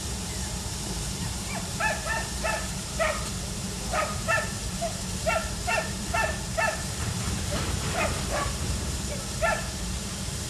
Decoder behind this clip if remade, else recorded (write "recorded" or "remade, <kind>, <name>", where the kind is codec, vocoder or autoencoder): remade, vocoder, BigVGAN v2